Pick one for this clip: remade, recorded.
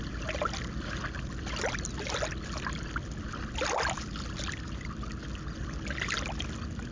recorded